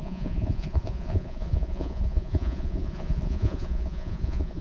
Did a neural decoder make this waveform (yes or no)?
yes